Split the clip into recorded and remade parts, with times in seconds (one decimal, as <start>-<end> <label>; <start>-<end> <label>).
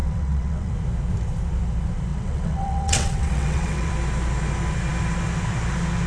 0.0-0.7 remade; 0.7-2.1 recorded; 2.1-3.9 remade; 3.9-6.1 recorded